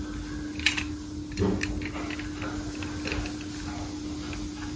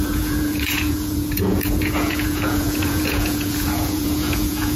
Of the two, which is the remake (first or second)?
second